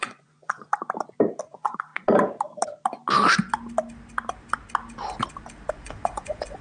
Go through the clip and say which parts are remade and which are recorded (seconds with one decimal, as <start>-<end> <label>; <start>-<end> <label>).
0.0-0.7 remade; 0.7-1.4 recorded; 1.4-1.9 remade; 1.9-5.7 recorded; 5.7-6.6 remade